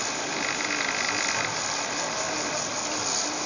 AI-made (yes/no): no